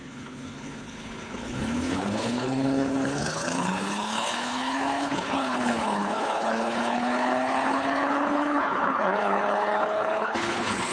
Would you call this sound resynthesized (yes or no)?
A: yes